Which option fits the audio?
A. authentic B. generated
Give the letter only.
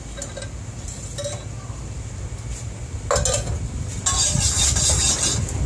A